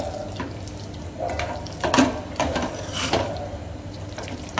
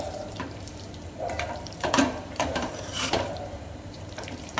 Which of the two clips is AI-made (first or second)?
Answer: second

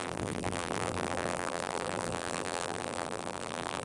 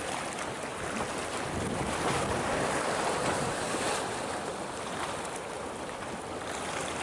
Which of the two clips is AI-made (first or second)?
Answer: first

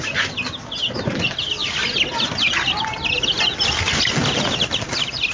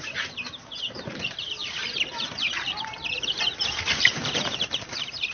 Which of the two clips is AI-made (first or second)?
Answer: second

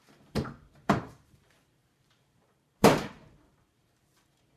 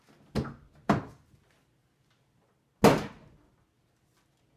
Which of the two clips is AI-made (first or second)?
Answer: first